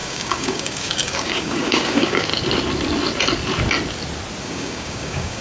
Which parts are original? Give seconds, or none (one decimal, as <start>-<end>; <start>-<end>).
2.3-4.4